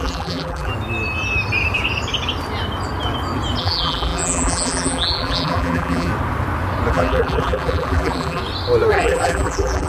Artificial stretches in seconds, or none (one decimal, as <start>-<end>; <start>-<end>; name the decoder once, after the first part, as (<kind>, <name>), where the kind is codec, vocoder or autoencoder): 0.0-0.7 (vocoder, BigVGAN v2); 3.6-6.1; 6.9-8.4; 8.9-9.9